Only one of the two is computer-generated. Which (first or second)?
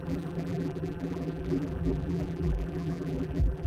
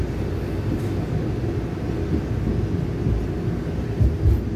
first